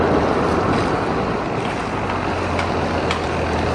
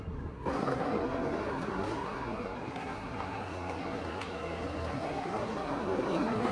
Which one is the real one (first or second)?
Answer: first